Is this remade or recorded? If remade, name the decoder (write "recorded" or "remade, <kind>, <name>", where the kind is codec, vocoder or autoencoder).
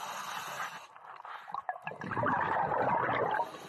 recorded